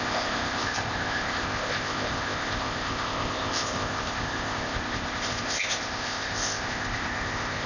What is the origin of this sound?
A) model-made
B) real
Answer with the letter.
A